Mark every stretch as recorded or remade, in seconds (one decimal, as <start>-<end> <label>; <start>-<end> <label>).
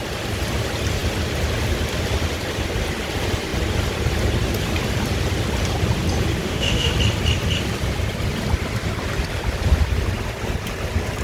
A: 0.0-6.4 recorded; 6.4-6.9 remade; 6.9-11.2 recorded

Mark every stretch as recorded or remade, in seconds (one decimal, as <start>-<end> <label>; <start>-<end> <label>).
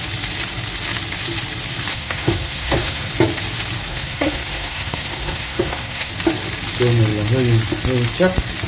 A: 0.0-1.9 recorded; 1.9-3.1 remade; 3.1-3.9 recorded; 3.9-6.1 remade; 6.1-8.7 recorded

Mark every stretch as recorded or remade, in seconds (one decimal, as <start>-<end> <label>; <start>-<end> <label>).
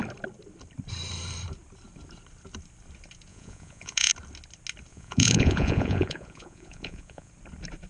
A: 0.0-3.3 recorded; 3.3-4.1 remade; 4.1-4.9 recorded; 4.9-7.3 remade; 7.3-7.9 recorded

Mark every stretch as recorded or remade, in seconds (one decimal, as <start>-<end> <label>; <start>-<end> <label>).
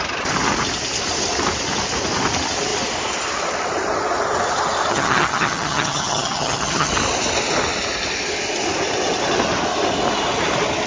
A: 0.0-4.9 recorded; 4.9-6.9 remade; 6.9-10.9 recorded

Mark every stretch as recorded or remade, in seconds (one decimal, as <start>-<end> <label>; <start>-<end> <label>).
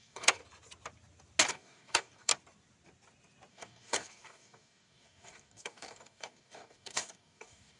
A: 0.0-0.4 remade; 0.4-1.5 recorded; 1.5-2.3 remade; 2.3-3.5 recorded; 3.5-7.8 remade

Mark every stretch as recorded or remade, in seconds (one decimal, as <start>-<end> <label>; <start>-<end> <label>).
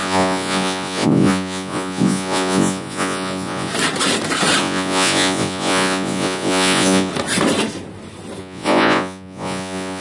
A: 0.0-3.7 remade; 3.7-4.6 recorded; 4.6-7.1 remade; 7.1-8.4 recorded; 8.4-10.0 remade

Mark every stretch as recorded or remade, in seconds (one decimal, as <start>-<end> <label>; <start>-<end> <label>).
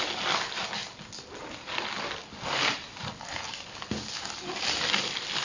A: 0.0-5.4 recorded